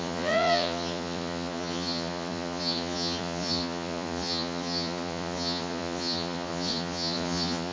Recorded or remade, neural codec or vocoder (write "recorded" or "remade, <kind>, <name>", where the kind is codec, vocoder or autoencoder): remade, vocoder, Vocos